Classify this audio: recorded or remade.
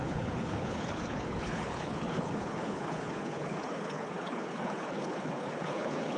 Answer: remade